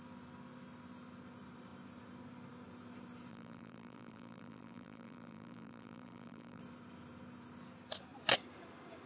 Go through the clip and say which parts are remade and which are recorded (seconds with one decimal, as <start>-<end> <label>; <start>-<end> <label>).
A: 0.0-3.3 recorded; 3.3-6.6 remade; 6.6-9.1 recorded